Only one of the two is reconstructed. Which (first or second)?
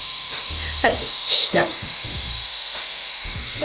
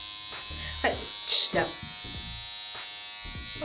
first